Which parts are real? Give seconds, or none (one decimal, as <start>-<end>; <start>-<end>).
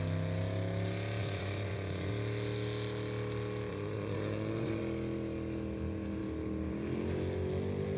0.0-1.2; 2.1-3.7; 4.8-8.0